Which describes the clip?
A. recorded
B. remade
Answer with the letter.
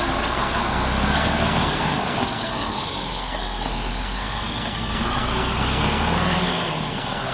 B